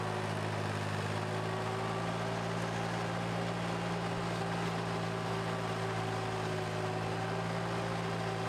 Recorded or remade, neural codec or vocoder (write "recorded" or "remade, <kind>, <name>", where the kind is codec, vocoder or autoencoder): recorded